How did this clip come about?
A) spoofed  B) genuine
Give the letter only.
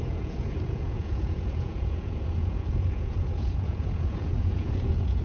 A